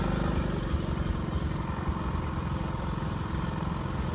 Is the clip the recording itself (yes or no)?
yes